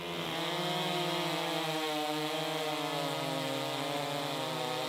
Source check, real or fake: real